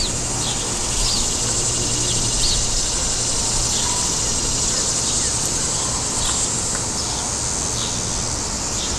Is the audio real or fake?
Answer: real